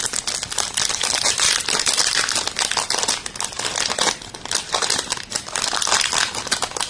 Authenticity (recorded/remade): recorded